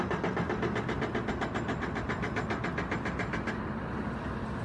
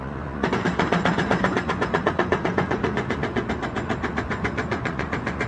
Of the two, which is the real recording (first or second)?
first